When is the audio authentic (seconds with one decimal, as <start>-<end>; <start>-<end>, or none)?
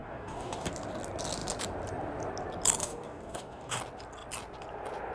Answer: 0.7-2.8; 3.8-5.1